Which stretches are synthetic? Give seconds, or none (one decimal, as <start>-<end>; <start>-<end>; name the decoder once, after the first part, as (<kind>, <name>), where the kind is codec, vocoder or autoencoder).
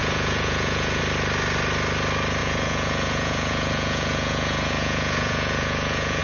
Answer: 0.0-1.0 (vocoder, Vocos); 2.4-6.2